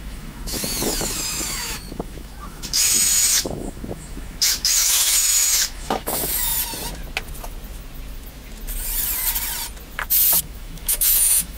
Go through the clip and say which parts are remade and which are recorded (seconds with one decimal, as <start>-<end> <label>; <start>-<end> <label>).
0.0-6.5 remade; 6.5-10.4 recorded; 10.4-11.6 remade